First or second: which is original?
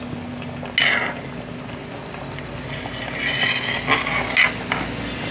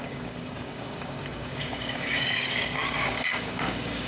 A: first